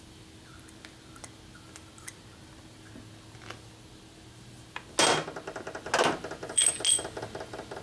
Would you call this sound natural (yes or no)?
yes